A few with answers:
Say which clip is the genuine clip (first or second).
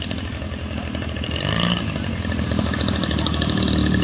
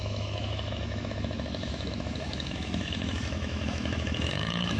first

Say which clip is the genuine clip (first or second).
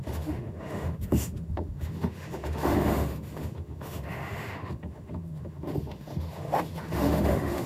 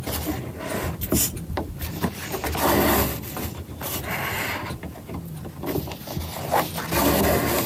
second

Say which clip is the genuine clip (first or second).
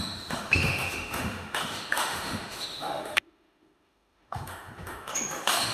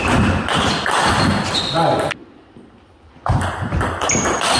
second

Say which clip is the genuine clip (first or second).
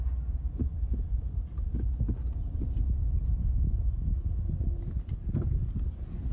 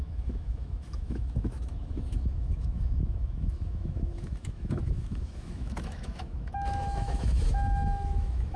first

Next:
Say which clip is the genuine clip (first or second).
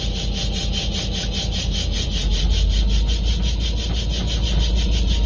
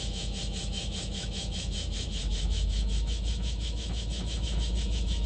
first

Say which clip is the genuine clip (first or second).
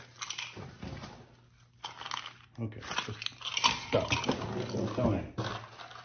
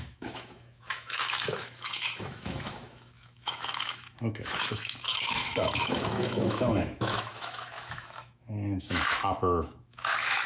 first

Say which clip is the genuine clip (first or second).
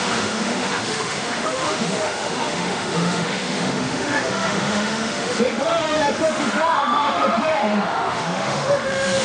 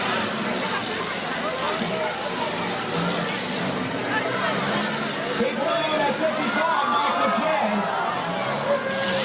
second